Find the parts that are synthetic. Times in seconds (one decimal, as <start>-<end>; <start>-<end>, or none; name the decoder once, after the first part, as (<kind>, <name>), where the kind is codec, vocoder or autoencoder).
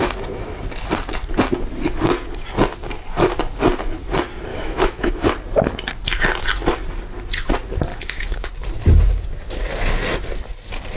4.5-5.1 (autoencoder, DAC-VAE); 7.9-8.5